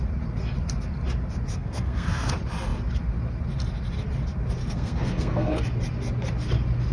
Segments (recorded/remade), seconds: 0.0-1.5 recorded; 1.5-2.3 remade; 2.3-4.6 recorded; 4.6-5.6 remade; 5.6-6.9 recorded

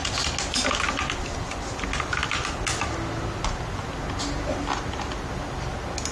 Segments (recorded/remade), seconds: 0.0-6.1 recorded

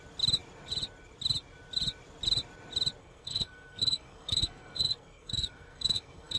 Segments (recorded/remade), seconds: 0.0-3.0 recorded; 3.0-6.4 remade

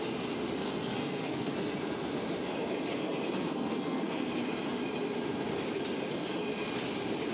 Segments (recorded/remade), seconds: 0.0-0.6 recorded; 0.6-1.7 remade; 1.7-3.4 recorded; 3.4-4.3 remade; 4.3-7.3 recorded